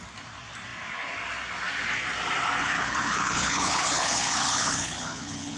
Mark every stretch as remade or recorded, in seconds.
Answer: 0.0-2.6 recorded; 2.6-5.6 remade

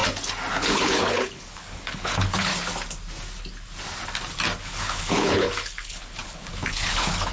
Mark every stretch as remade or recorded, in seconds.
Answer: 0.0-0.5 recorded; 0.5-2.5 remade; 2.5-4.6 recorded; 4.6-7.3 remade

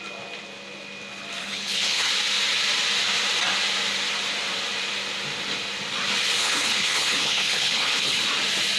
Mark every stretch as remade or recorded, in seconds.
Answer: 0.0-1.4 recorded; 1.4-2.1 remade; 2.1-6.4 recorded; 6.4-8.2 remade; 8.2-8.8 recorded

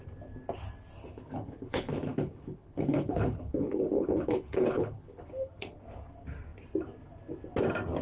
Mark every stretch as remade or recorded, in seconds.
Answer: 0.0-1.0 recorded; 1.0-5.8 remade; 5.8-8.0 recorded

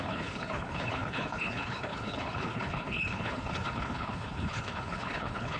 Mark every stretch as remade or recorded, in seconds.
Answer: 0.0-5.6 remade

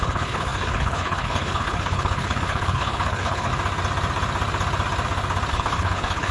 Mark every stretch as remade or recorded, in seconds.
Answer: 0.0-3.5 remade; 3.5-5.5 recorded; 5.5-6.3 remade

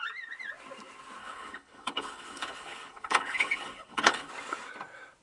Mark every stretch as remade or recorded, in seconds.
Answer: 0.0-1.2 recorded; 1.2-4.3 remade; 4.3-5.2 recorded